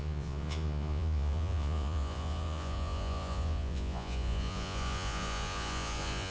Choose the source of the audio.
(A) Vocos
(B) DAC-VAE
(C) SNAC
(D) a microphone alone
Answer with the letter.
A